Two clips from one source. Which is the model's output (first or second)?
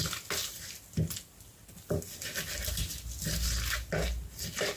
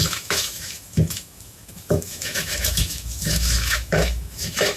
second